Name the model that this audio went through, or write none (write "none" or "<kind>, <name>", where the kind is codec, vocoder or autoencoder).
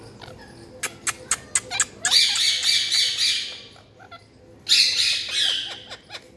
none